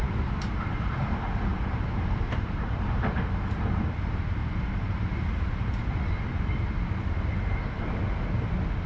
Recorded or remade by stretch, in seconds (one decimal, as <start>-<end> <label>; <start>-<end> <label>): 0.0-1.5 recorded; 1.5-2.7 remade; 2.7-4.4 recorded; 4.4-6.0 remade; 6.0-8.9 recorded